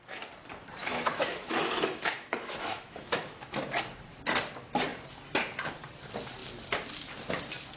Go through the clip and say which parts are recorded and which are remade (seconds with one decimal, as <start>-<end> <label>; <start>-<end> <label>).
0.0-0.8 recorded; 0.8-3.6 remade; 3.6-7.8 recorded